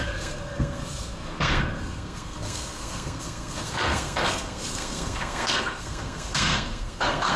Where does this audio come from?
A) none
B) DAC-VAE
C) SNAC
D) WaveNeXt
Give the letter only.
C